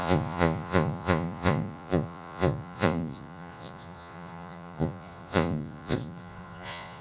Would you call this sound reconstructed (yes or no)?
yes